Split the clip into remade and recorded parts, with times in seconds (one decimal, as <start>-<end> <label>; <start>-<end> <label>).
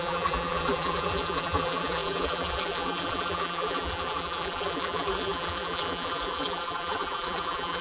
0.0-7.8 remade